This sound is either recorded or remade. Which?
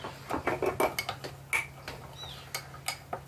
recorded